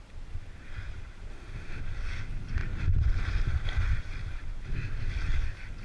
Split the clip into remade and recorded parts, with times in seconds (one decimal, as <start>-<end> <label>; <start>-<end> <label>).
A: 0.0-1.3 recorded; 1.3-1.8 remade; 1.8-5.8 recorded

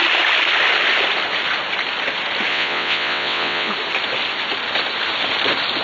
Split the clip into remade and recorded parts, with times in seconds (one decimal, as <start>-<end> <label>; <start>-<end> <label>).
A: 0.0-2.5 recorded; 2.5-3.7 remade; 3.7-5.8 recorded

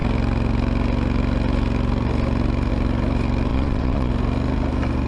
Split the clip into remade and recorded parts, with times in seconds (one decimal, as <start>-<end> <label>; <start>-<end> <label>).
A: 0.0-3.5 recorded; 3.5-4.1 remade; 4.1-5.1 recorded

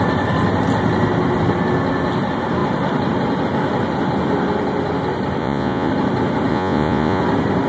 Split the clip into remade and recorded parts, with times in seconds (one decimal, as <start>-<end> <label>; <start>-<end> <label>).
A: 0.0-5.4 recorded; 5.4-5.9 remade; 5.9-6.5 recorded; 6.5-7.2 remade; 7.2-7.7 recorded

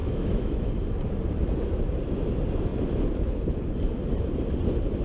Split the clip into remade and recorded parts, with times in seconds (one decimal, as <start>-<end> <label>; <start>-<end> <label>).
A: 0.0-0.7 remade; 0.7-5.0 recorded

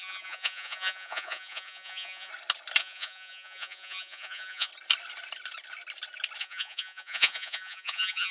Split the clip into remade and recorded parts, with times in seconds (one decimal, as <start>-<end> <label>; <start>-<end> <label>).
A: 0.0-2.3 remade; 2.3-2.8 recorded; 2.8-4.7 remade; 4.7-6.4 recorded; 6.4-8.3 remade

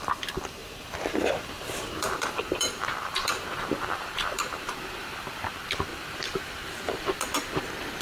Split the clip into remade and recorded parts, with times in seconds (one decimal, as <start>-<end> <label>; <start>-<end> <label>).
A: 0.0-0.6 recorded; 0.6-5.4 remade; 5.4-5.9 recorded; 5.9-7.0 remade; 7.0-8.0 recorded